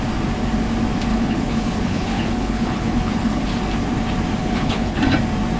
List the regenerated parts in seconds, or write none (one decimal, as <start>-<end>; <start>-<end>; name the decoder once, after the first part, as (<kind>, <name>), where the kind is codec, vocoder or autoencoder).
1.1-3.5 (codec, HILCodec); 4.4-5.0